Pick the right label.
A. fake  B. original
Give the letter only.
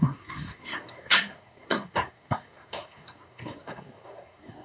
A